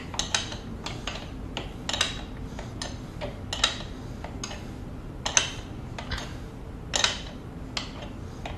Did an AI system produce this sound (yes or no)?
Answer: no